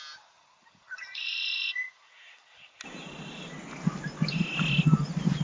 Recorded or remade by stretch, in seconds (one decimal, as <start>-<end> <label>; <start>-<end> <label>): 0.0-0.6 recorded; 0.6-2.7 remade; 2.7-5.4 recorded